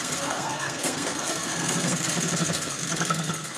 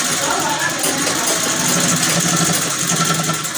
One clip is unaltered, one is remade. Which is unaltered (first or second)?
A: second